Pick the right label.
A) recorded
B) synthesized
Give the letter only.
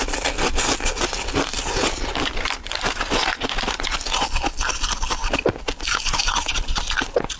A